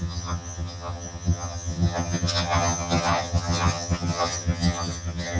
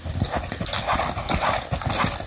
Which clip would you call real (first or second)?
second